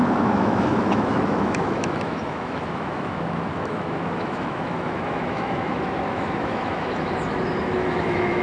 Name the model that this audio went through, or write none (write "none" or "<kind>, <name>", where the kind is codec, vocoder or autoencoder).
autoencoder, DAC-VAE